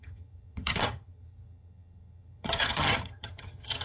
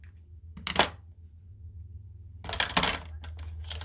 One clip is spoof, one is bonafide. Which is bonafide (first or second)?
second